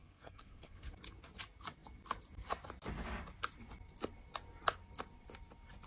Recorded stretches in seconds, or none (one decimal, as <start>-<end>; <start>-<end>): 0.9-5.9